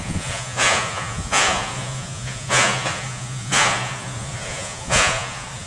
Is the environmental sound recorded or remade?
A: remade